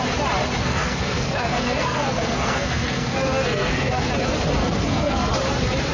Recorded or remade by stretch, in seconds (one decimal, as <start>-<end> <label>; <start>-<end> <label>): 0.0-0.6 recorded; 0.6-4.1 remade; 4.1-4.6 recorded; 4.6-5.3 remade; 5.3-5.9 recorded